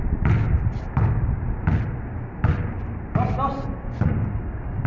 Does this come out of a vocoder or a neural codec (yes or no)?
no